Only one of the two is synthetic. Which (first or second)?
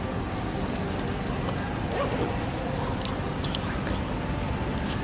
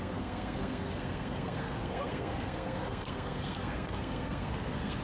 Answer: second